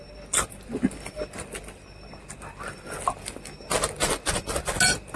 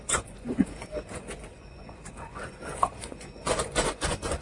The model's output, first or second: second